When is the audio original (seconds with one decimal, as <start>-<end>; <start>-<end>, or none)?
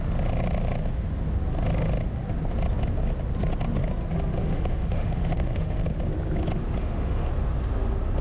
0.0-4.4; 5.8-6.8; 7.3-8.2